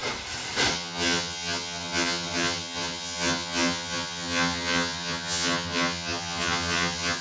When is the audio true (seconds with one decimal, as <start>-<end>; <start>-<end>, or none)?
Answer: 0.0-0.7

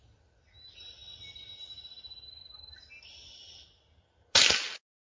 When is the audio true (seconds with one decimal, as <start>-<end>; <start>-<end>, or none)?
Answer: 0.0-5.0

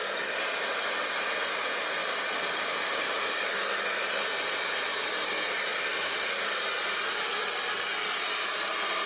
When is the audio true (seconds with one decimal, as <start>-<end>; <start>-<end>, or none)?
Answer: 0.0-9.1

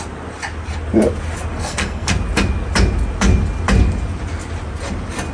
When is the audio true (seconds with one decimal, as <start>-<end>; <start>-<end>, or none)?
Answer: 0.0-1.5; 2.1-5.3

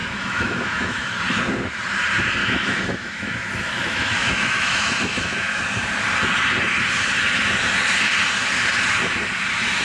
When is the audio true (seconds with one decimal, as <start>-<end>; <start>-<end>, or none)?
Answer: 1.2-2.4; 5.6-9.8

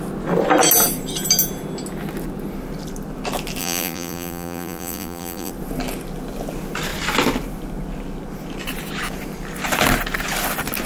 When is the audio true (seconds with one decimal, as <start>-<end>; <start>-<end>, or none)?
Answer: 0.0-3.6; 5.5-10.9